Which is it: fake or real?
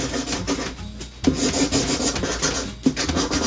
real